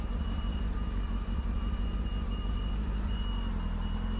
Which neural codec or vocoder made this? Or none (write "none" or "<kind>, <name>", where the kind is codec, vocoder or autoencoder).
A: none